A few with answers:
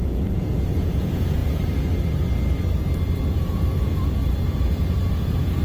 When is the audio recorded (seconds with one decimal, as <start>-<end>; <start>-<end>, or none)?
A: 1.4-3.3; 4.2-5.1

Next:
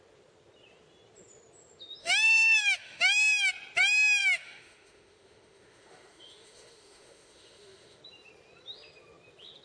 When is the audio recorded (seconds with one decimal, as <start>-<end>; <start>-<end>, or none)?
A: 0.0-2.0; 3.5-4.2; 8.0-9.6

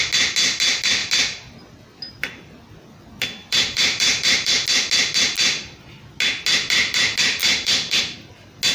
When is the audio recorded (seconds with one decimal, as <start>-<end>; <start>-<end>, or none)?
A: 0.0-3.4; 4.5-7.4; 8.0-8.7